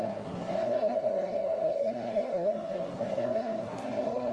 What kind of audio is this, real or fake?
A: fake